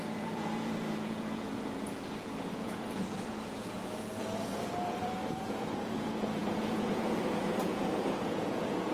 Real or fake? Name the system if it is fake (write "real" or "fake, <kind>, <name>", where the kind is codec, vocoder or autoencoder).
fake, vocoder, Vocos